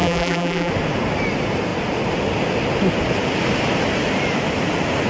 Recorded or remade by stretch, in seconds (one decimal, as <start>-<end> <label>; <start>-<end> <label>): 0.0-0.7 remade; 0.7-5.1 recorded